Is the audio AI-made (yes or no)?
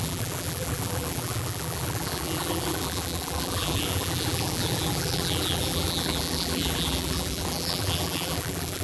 yes